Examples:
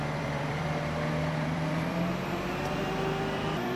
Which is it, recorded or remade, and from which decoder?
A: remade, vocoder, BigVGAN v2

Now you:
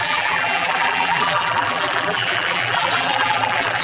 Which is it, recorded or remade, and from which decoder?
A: remade, vocoder, BigVGAN v2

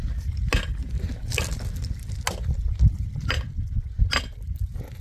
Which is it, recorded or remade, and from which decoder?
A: recorded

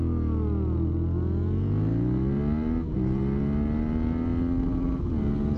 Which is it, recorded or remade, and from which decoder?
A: recorded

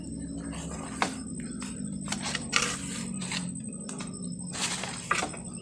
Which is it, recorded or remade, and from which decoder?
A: remade, vocoder, BigVGAN v2